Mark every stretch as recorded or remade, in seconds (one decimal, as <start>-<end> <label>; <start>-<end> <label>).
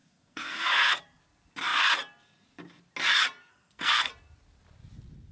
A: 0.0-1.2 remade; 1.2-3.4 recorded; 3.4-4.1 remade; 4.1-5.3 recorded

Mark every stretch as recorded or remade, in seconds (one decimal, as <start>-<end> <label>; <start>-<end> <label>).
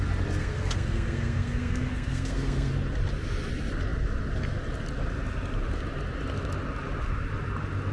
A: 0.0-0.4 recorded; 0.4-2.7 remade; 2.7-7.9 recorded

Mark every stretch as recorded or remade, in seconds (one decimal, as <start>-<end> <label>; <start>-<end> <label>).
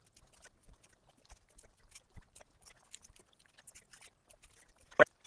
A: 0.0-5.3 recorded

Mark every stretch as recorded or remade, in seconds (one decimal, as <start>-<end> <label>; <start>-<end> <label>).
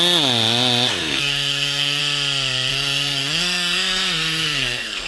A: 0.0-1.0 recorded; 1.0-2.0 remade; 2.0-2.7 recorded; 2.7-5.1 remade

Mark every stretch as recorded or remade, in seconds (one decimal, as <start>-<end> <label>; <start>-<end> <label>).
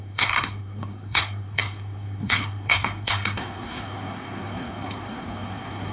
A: 0.0-5.9 remade